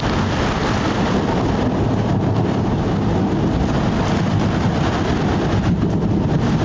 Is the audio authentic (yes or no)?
yes